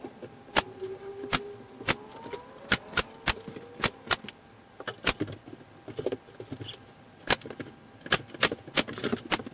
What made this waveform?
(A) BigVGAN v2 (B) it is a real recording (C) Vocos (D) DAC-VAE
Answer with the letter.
B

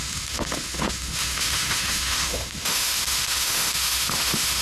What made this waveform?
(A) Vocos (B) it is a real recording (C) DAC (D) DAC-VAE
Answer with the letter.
D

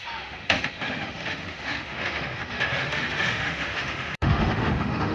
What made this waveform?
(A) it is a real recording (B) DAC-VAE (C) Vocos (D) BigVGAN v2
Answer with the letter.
B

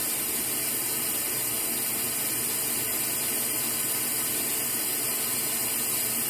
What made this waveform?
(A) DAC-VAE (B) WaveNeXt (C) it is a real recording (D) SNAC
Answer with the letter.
C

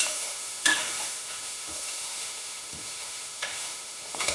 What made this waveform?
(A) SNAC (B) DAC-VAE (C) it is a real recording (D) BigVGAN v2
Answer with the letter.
B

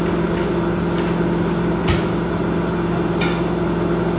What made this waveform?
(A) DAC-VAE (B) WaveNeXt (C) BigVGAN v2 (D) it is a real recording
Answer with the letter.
D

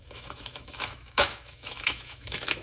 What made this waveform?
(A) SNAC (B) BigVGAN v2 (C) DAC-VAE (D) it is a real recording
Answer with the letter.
C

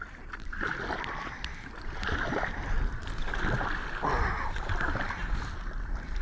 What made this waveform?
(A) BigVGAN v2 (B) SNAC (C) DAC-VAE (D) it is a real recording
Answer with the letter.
D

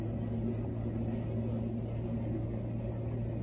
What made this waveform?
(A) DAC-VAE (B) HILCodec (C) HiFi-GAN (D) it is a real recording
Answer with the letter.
D